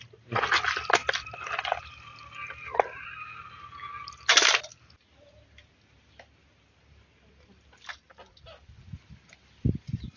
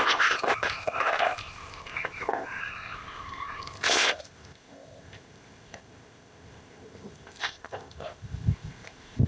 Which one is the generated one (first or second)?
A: second